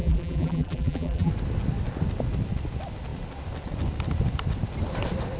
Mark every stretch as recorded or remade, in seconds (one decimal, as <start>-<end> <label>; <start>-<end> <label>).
0.0-1.3 remade; 1.3-5.4 recorded